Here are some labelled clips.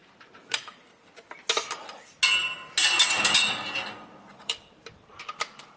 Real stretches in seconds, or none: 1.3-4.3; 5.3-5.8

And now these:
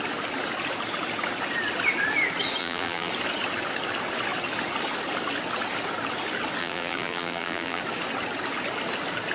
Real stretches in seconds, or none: 0.0-2.6; 3.1-6.6; 7.8-9.3